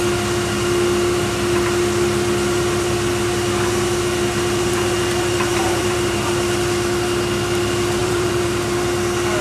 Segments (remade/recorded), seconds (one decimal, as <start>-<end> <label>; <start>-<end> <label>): 0.0-5.5 recorded; 5.5-6.3 remade; 6.3-8.0 recorded; 8.0-8.6 remade; 8.6-9.4 recorded